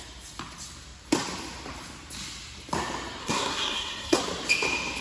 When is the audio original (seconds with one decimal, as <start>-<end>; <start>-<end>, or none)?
0.0-3.2; 4.2-5.0